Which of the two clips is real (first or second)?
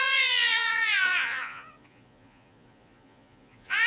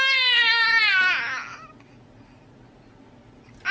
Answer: second